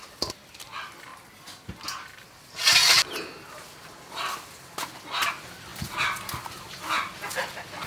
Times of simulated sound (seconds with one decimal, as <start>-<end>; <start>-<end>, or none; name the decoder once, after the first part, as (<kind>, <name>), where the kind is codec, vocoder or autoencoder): 0.0-1.1 (vocoder, BigVGAN v2); 5.3-5.7; 7.4-7.9